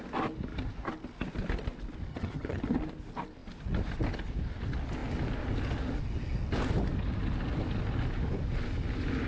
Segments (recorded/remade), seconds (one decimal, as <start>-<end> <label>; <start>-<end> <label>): 0.0-2.1 recorded; 2.1-2.6 remade; 2.6-9.3 recorded